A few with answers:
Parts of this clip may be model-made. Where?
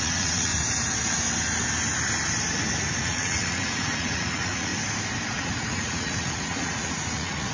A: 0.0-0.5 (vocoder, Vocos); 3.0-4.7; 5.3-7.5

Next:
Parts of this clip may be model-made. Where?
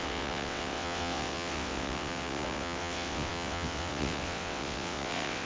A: 0.0-5.5 (vocoder, WaveNeXt)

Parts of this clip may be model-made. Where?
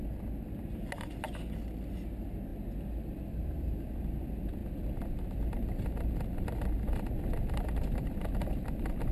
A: none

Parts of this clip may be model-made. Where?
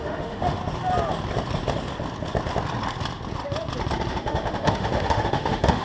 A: 0.0-0.6 (autoencoder, DAC-VAE); 4.1-5.8